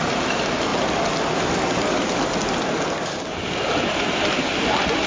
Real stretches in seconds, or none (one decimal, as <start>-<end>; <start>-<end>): 0.0-5.1